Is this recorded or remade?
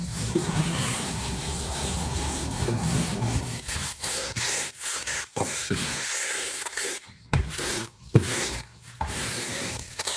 remade